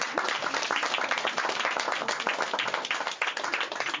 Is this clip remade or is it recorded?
recorded